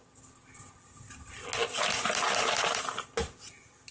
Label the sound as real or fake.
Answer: real